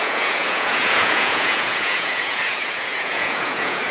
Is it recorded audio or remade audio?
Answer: remade